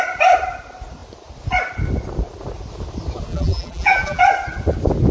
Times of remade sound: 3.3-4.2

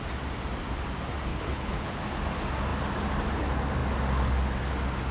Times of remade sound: 1.3-2.0

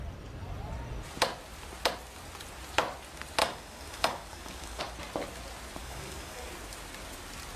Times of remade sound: 3.4-4.8; 5.8-6.5

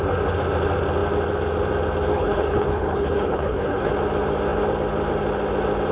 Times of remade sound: 2.1-3.9

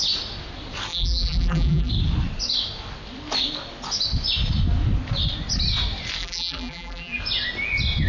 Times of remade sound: 0.9-1.9; 6.2-7.2